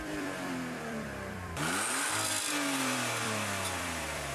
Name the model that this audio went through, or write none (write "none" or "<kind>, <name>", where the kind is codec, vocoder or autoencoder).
vocoder, BigVGAN v2